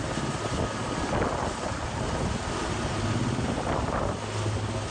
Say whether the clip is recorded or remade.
recorded